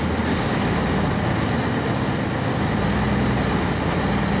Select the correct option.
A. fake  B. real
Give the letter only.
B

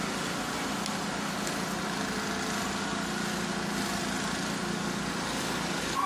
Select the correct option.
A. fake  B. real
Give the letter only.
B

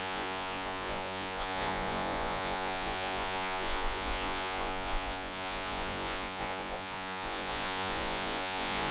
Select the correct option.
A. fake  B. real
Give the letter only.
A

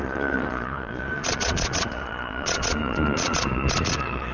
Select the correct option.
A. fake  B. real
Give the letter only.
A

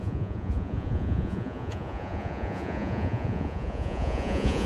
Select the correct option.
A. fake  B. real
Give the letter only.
A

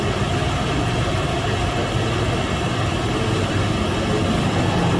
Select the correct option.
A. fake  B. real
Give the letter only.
B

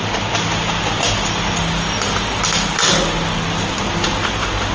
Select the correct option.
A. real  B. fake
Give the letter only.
A